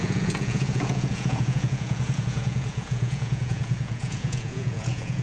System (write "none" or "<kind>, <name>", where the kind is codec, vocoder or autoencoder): vocoder, Vocos